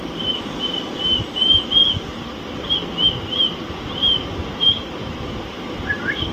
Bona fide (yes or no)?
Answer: yes